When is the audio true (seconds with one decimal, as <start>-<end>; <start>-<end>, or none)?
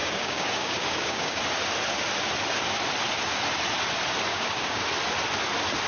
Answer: 1.4-4.3; 4.8-5.9